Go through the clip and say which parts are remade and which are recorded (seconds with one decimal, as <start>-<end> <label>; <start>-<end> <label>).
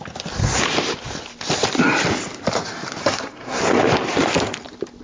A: 0.0-3.0 recorded; 3.0-3.6 remade; 3.6-5.0 recorded